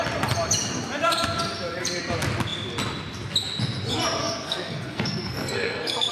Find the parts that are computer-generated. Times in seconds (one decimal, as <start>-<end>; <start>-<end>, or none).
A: 4.2-6.1